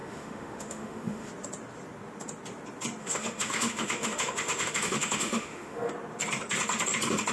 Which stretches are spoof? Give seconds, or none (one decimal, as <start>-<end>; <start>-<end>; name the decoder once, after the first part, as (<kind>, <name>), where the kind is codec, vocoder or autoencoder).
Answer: 0.0-1.3 (autoencoder, DAC-VAE); 3.0-5.9